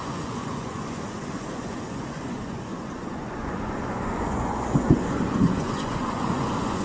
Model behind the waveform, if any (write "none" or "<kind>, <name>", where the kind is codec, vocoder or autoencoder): vocoder, Vocos